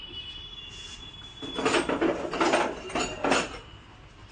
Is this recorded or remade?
recorded